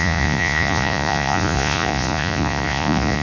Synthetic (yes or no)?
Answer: yes